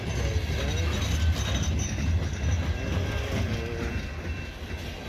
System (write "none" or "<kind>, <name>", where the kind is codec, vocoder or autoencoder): none